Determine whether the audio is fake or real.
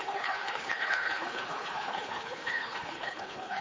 fake